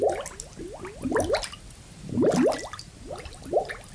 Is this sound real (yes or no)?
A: yes